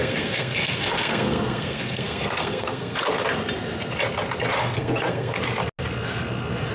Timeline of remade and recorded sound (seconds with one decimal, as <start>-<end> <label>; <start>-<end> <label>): 0.0-3.2 remade; 3.2-4.6 recorded; 4.6-5.4 remade; 5.4-6.7 recorded